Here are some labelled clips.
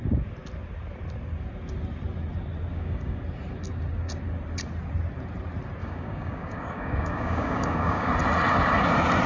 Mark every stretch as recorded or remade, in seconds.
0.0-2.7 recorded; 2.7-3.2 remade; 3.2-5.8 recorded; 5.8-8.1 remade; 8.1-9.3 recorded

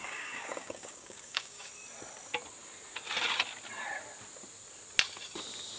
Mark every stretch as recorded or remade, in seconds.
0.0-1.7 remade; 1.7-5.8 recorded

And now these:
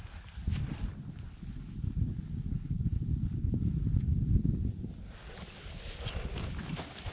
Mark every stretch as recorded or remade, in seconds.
0.0-7.1 recorded